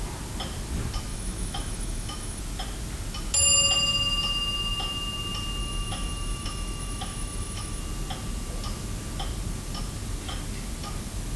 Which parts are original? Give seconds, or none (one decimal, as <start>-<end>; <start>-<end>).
0.0-1.1; 2.4-5.6; 7.8-11.4